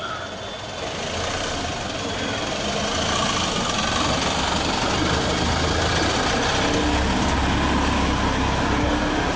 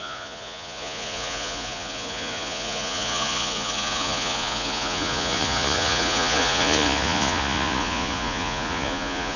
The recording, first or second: first